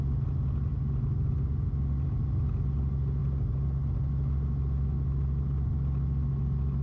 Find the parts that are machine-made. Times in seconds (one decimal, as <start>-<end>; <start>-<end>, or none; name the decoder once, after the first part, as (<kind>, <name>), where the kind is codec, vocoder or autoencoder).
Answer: none